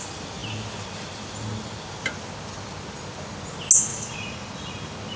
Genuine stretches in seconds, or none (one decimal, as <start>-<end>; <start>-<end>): 0.0-3.9; 4.5-5.2